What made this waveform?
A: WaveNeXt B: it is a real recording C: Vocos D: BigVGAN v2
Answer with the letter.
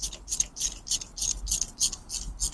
B